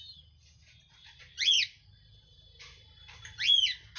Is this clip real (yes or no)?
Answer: yes